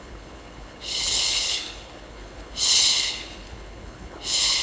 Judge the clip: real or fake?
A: fake